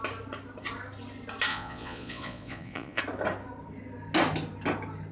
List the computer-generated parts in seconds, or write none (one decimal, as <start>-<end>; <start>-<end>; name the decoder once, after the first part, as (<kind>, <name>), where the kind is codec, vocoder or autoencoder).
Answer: 1.5-3.0 (vocoder, Vocos)